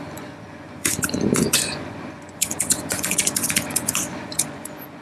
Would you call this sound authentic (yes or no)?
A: no